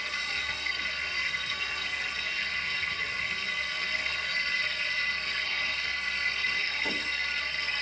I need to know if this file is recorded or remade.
remade